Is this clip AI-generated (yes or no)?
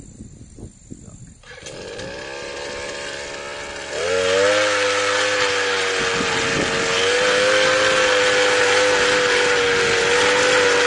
no